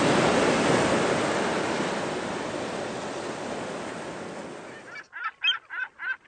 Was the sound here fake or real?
real